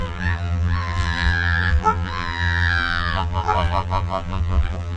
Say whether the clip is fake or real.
fake